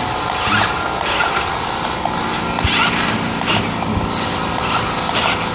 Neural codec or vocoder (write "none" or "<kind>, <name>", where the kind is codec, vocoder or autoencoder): none